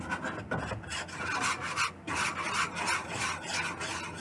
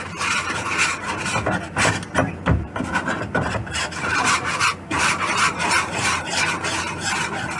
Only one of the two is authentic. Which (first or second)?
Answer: first